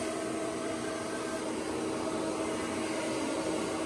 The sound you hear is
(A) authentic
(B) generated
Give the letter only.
A